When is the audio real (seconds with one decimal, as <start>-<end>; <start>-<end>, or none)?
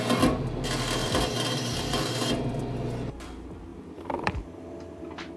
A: 0.0-1.0; 2.3-3.7; 5.0-5.4